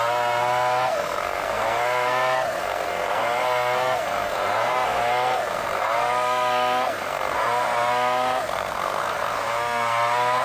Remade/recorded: remade